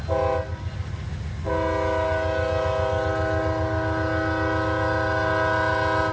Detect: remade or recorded recorded